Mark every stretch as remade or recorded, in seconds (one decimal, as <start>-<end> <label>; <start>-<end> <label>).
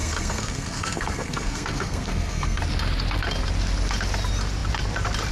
0.0-2.6 remade; 2.6-5.3 recorded